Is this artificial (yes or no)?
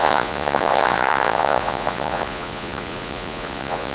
yes